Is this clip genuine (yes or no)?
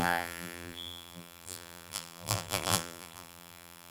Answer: no